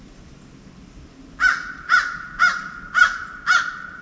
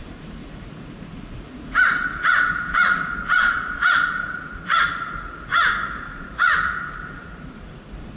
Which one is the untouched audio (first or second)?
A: first